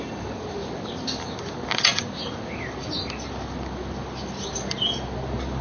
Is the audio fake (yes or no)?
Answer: no